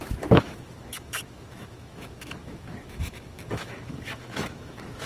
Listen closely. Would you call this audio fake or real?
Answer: fake